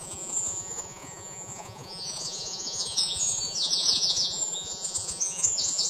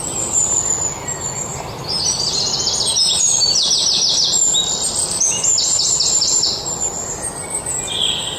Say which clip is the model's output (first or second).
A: first